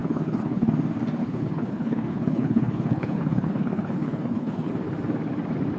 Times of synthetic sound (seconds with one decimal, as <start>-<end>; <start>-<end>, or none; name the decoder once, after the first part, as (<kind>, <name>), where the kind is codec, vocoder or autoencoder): 0.0-0.7 (codec, HILCodec); 1.2-4.7